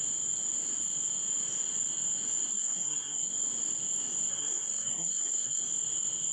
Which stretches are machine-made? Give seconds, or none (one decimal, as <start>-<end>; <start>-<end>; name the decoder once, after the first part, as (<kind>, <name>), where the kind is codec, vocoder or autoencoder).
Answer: 2.5-3.3 (codec, SNAC); 4.3-5.6